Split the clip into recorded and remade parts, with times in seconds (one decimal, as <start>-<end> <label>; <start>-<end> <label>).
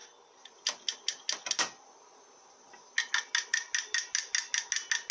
0.0-5.1 recorded